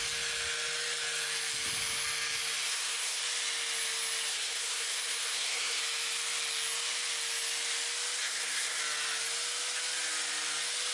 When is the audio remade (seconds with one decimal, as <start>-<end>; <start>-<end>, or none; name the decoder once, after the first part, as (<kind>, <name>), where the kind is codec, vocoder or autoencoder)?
2.7-3.2 (codec, SNAC); 4.3-5.8; 8.2-8.8